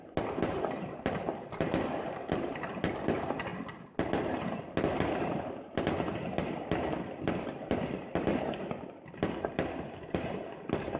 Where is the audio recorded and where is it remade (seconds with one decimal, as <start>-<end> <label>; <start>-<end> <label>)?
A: 0.0-11.0 recorded